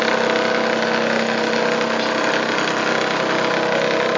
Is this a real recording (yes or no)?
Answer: yes